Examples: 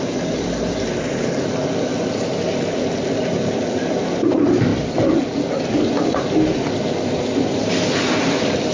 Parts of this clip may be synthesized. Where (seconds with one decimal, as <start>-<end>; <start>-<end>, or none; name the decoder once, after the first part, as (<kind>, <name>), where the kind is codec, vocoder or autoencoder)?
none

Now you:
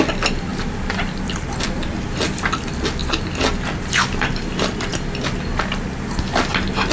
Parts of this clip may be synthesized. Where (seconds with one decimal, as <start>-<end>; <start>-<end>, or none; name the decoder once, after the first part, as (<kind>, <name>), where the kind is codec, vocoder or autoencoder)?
none

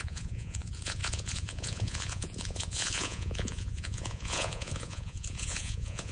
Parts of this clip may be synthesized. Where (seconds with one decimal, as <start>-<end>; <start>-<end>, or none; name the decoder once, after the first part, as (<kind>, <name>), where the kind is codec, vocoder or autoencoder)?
0.0-6.1 (vocoder, Vocos)

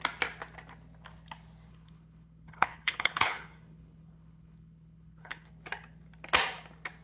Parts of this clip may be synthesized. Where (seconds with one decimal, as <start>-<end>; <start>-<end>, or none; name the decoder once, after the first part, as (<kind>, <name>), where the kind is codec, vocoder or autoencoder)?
1.7-5.5 (codec, HILCodec)